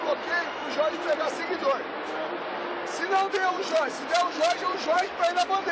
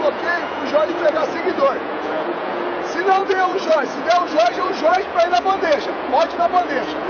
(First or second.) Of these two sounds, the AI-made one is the second